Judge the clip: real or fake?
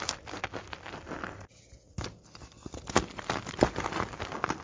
real